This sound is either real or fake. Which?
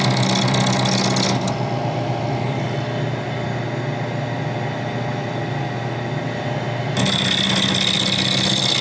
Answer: real